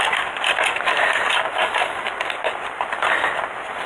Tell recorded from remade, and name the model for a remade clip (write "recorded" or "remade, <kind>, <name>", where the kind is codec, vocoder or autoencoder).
recorded